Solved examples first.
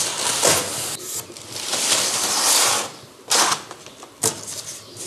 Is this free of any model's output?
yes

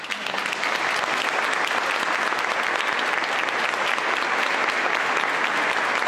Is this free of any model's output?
yes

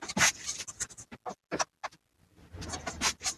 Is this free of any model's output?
yes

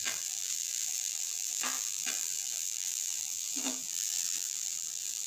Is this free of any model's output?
no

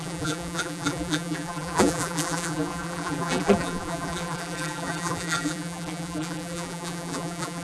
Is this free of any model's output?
no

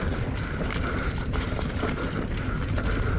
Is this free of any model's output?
yes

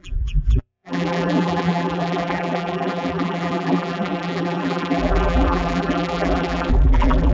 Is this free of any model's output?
no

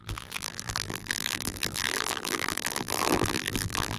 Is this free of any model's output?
no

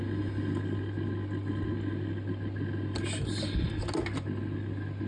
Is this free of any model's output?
yes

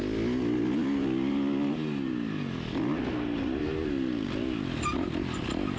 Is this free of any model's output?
yes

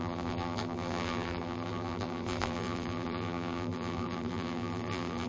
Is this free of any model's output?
no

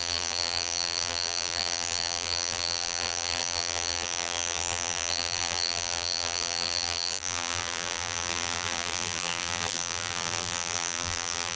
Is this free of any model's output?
no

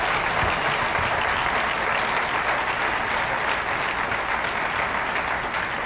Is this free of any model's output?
yes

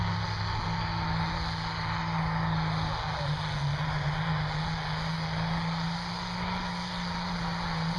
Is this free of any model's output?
yes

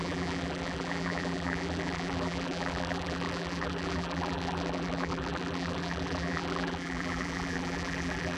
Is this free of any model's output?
no